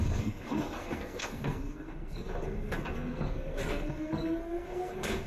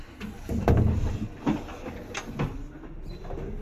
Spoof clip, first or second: first